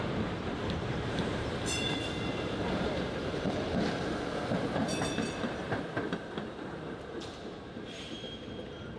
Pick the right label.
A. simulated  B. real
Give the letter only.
A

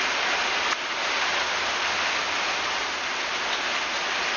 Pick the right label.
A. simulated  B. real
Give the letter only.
B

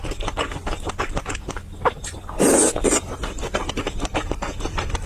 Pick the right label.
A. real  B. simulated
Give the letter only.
A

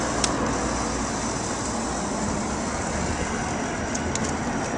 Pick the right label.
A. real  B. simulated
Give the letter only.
A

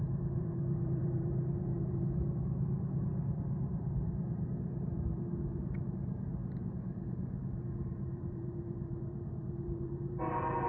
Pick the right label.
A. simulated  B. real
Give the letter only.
A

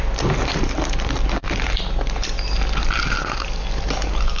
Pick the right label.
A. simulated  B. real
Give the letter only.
B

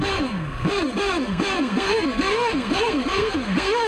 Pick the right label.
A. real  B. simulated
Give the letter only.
B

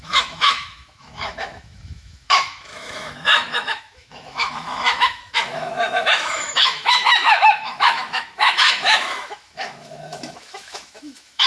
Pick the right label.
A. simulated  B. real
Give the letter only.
A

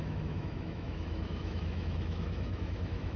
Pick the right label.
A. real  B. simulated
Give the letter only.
B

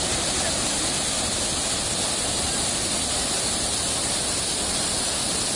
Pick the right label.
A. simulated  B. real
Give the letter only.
B